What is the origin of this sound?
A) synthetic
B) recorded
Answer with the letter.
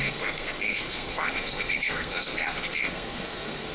A